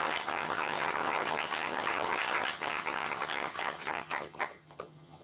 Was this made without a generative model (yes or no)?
no